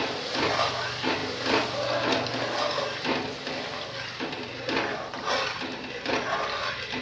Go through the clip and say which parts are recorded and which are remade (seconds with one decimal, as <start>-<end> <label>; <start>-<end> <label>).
0.0-7.0 recorded